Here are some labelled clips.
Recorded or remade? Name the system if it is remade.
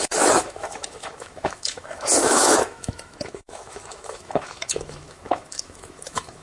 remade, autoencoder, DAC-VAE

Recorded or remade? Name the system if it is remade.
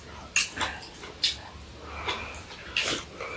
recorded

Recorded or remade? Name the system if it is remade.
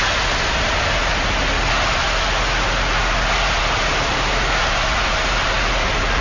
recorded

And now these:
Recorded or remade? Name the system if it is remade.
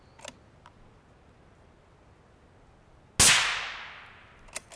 recorded